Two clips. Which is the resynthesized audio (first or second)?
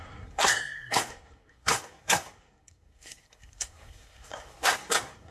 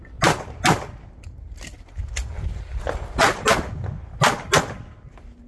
first